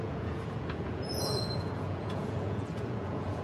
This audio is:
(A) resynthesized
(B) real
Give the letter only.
A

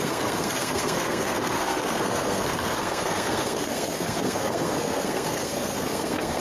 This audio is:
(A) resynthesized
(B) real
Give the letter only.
A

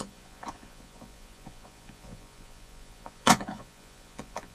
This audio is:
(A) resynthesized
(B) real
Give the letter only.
A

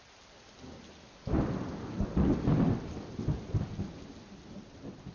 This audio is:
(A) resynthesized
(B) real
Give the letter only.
B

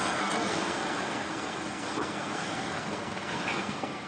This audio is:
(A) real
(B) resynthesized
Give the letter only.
B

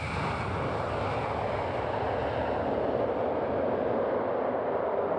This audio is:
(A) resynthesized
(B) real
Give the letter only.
B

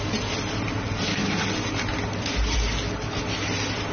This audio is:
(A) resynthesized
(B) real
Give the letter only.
B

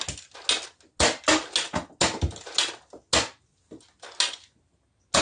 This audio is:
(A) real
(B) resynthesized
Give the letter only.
A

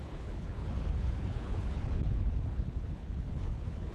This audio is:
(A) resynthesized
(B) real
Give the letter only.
A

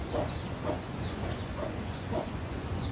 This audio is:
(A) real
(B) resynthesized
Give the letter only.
B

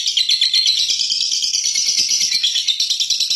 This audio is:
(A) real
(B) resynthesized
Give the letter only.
A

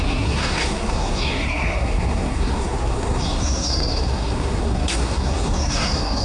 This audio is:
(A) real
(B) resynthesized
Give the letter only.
B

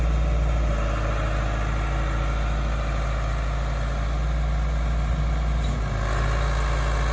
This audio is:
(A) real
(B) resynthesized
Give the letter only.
A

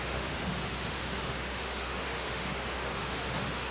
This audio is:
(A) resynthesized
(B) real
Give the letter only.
A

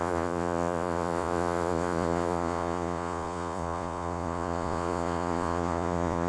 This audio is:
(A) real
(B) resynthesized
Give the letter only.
B